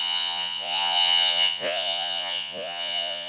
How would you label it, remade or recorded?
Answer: remade